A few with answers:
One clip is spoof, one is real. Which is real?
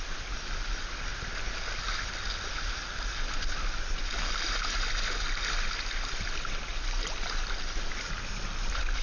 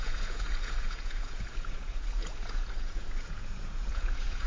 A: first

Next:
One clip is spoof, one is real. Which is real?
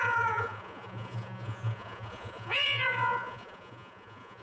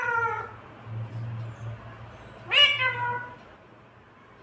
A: second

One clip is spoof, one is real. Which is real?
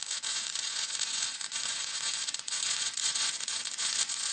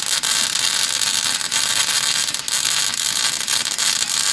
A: second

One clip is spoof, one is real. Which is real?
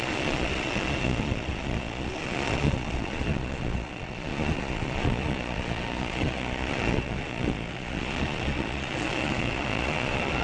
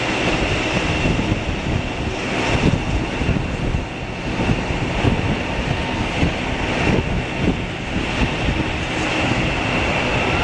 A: second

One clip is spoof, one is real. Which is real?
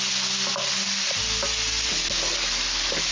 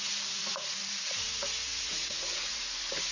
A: first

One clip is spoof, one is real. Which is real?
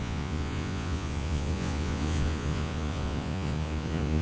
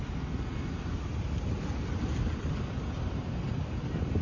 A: second